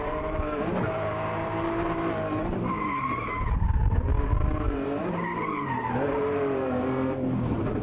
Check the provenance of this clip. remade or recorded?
remade